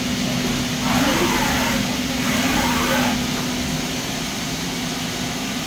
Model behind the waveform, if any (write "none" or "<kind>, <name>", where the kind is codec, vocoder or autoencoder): none